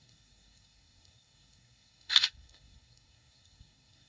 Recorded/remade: remade